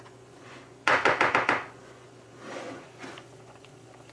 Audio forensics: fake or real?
fake